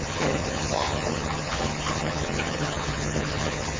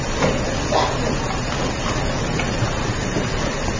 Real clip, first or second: second